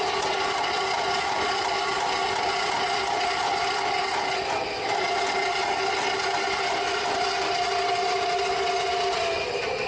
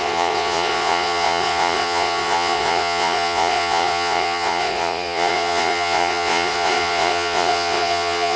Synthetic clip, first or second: second